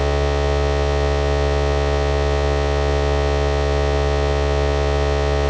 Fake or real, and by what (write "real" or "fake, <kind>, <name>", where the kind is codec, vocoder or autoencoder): real